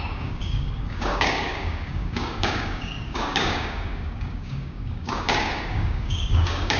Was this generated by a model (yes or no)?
yes